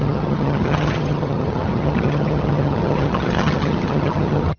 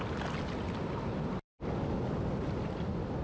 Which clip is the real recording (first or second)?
second